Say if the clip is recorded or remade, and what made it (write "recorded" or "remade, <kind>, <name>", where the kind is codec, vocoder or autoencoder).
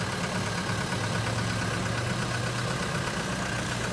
recorded